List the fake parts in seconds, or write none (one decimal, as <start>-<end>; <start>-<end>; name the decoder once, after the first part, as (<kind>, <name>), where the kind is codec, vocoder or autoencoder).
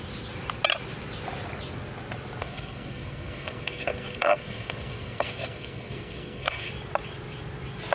2.4-6.7 (codec, SNAC)